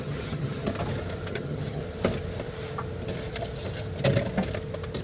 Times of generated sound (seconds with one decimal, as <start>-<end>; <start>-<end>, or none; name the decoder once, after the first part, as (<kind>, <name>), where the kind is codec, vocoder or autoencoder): 0.0-0.7 (vocoder, HiFi-GAN); 1.3-1.8